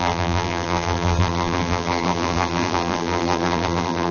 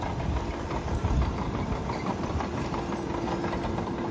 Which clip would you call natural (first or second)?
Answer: second